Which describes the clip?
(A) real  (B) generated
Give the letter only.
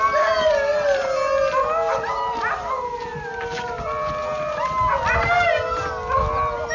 A